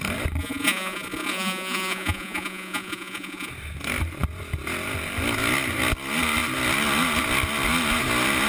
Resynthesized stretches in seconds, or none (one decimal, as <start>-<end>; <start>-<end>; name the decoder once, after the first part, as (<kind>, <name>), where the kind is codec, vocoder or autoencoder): 0.4-3.5 (vocoder, Vocos)